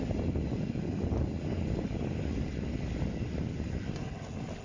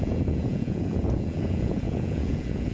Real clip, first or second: first